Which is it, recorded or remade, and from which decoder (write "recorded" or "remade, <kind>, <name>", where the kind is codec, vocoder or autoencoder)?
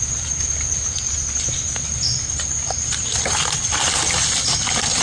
recorded